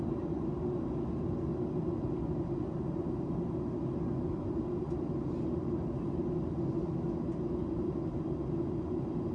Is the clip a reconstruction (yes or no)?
no